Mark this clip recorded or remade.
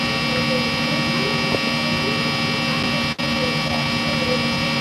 recorded